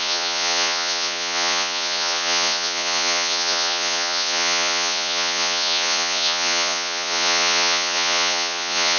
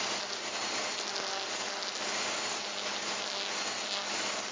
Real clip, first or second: second